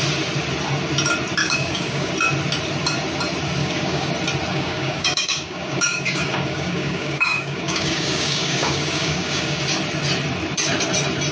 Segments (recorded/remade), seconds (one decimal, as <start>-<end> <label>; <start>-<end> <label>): 0.0-1.4 recorded; 1.4-2.1 remade; 2.1-3.6 recorded; 3.6-4.1 remade; 4.1-4.5 recorded; 4.5-9.6 remade; 9.6-11.3 recorded